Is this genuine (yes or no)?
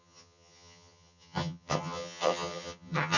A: no